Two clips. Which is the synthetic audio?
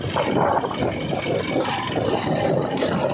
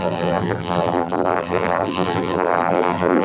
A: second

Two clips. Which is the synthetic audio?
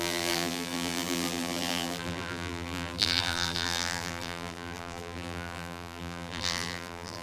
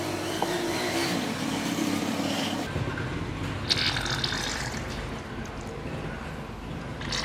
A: first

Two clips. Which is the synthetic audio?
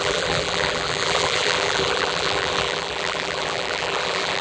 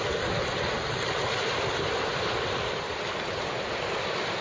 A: first